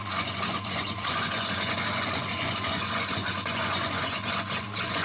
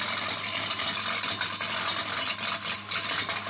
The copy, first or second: first